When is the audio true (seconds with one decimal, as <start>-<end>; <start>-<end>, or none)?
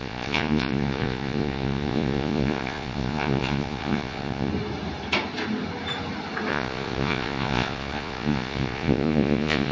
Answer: 4.5-6.5